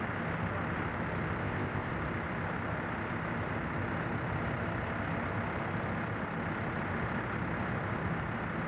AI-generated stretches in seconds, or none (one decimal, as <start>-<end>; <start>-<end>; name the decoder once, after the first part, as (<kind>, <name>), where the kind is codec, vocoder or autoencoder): 1.4-1.9 (codec, ZipCodec)